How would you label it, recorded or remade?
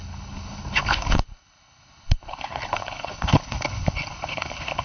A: remade